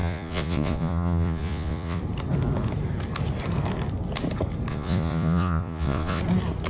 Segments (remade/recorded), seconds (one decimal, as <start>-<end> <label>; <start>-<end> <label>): 0.0-2.0 remade; 2.0-4.7 recorded; 4.7-6.2 remade; 6.2-6.7 recorded

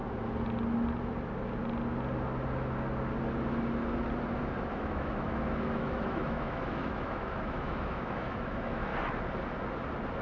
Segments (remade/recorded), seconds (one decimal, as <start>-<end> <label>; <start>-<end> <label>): 0.0-4.7 recorded; 4.7-8.9 remade; 8.9-10.2 recorded

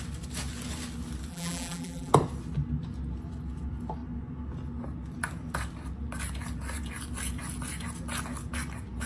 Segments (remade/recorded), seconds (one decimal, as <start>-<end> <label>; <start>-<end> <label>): 0.0-1.3 recorded; 1.3-2.1 remade; 2.1-9.1 recorded

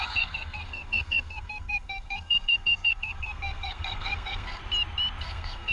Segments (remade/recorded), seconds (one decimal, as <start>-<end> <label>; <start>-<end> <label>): 0.0-4.6 remade; 4.6-5.2 recorded; 5.2-5.7 remade

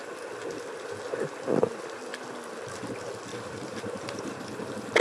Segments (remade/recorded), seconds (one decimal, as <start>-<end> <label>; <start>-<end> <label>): 0.0-3.3 recorded; 3.3-4.3 remade; 4.3-5.0 recorded

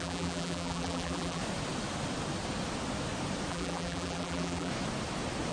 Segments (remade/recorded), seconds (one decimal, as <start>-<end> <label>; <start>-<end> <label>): 0.0-1.4 remade; 1.4-3.5 recorded; 3.5-4.7 remade; 4.7-5.5 recorded

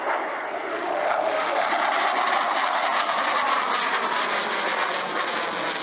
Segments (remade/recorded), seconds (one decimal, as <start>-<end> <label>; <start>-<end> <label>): 0.0-0.7 recorded; 0.7-1.7 remade; 1.7-5.8 recorded

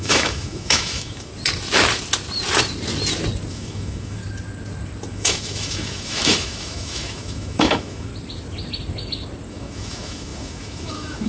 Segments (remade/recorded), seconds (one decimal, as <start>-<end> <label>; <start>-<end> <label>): 0.0-1.3 remade; 1.3-3.5 recorded; 3.5-4.2 remade; 4.2-5.1 recorded; 5.1-8.1 remade; 8.1-9.5 recorded; 9.5-11.3 remade